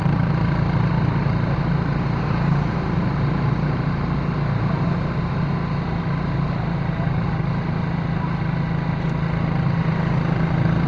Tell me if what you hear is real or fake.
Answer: real